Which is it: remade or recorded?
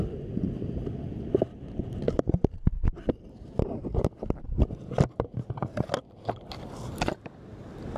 recorded